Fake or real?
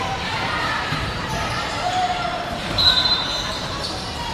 fake